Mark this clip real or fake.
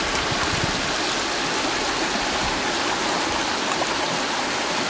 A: real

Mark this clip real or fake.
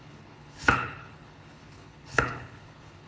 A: fake